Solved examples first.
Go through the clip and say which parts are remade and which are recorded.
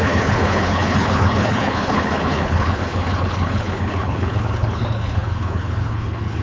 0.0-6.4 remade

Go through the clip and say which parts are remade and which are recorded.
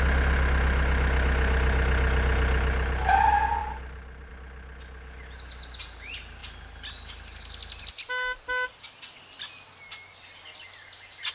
0.0-3.6 recorded; 3.6-4.3 remade; 4.3-11.3 recorded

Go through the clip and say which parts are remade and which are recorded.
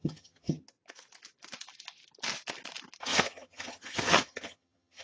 0.0-0.6 remade; 0.6-3.0 recorded; 3.0-5.0 remade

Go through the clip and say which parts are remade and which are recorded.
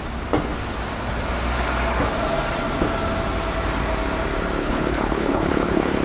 0.0-4.6 recorded; 4.6-6.0 remade